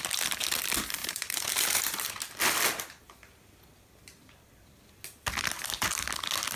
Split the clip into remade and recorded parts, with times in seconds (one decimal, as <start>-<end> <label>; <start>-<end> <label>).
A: 0.0-1.0 recorded; 1.0-2.1 remade; 2.1-6.6 recorded